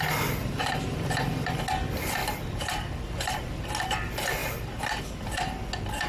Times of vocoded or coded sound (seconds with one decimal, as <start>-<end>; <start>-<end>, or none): 0.4-1.6; 4.4-5.0